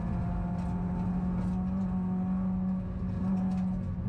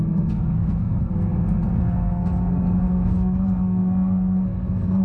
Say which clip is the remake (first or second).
second